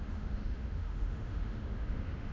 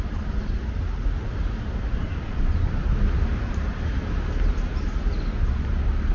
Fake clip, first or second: first